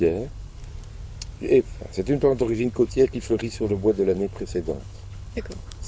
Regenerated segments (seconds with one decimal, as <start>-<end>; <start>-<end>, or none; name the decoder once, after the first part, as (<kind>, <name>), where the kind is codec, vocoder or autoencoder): 0.0-0.6 (codec, HILCodec); 2.2-5.9